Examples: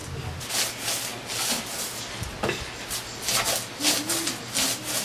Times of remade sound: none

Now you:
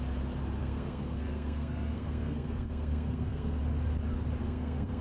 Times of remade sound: 0.6-3.6 (codec, SNAC); 4.4-5.0